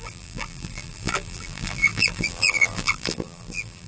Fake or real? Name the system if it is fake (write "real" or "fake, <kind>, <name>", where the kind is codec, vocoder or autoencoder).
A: fake, vocoder, BigVGAN v2